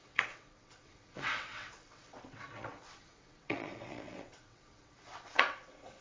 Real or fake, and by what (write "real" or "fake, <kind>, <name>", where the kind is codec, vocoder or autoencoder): fake, vocoder, WaveNeXt